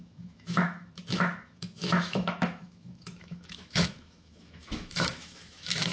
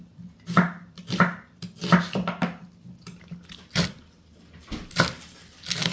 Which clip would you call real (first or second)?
second